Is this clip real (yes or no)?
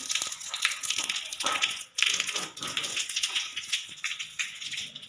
no